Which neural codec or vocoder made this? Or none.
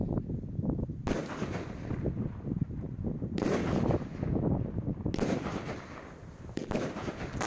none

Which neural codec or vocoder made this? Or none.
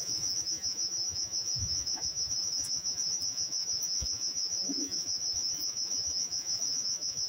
vocoder, Vocos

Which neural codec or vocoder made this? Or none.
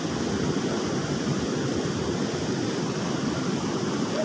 none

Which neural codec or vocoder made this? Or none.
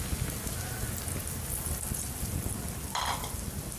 none